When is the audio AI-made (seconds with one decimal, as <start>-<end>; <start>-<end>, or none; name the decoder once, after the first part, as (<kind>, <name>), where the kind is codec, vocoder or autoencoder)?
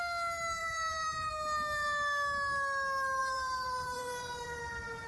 0.6-1.3 (vocoder, BigVGAN v2); 3.2-4.6